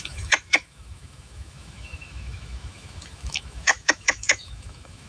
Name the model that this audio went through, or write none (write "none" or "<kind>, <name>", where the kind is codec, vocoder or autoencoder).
autoencoder, DAC-VAE